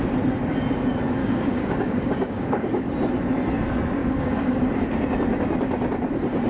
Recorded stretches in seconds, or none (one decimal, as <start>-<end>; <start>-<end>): 0.0-1.2; 2.9-4.0; 4.7-6.5